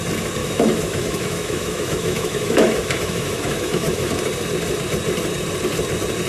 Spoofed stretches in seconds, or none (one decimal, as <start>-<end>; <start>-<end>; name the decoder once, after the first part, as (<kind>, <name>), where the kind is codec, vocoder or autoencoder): 0.4-4.2 (autoencoder, DAC-VAE)